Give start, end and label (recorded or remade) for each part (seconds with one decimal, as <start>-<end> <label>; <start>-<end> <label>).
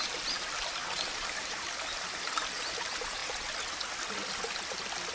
0.0-0.8 recorded; 0.8-2.2 remade; 2.2-5.1 recorded